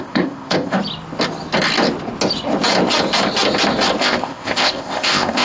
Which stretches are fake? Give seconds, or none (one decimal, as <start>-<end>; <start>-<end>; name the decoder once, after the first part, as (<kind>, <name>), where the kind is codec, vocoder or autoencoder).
0.0-0.8 (codec, ZipCodec); 4.0-5.4